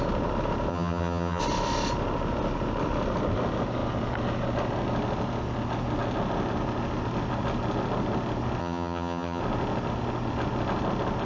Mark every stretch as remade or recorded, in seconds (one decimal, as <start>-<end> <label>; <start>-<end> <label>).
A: 0.0-0.7 recorded; 0.7-1.4 remade; 1.4-8.6 recorded; 8.6-9.4 remade; 9.4-11.2 recorded